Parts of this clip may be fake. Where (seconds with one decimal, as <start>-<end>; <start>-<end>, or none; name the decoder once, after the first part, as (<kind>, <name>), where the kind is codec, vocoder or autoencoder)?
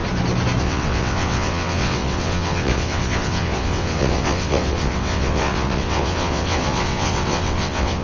0.6-8.0 (vocoder, WaveNeXt)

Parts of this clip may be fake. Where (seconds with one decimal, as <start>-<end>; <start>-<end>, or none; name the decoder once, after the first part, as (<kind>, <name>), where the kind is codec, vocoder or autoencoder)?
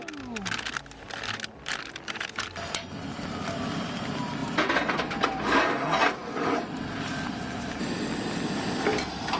none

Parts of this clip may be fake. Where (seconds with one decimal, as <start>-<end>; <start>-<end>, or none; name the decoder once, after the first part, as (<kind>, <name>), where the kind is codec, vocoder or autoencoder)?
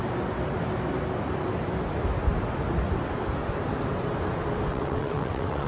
4.7-5.7 (vocoder, WaveNeXt)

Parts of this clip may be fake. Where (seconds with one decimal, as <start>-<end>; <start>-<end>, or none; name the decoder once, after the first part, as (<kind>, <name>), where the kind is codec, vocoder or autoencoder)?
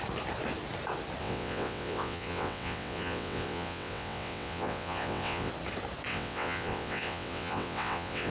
1.2-5.5 (vocoder, WaveNeXt); 6.1-8.3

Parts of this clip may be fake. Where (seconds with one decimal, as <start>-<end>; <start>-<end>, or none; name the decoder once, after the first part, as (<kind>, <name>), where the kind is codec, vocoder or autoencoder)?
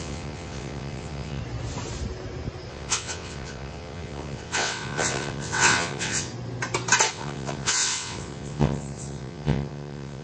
0.0-1.4 (vocoder, WaveNeXt); 2.7-6.3; 7.1-10.2